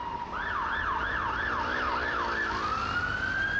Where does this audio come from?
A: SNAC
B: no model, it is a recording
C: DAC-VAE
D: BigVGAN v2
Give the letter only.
B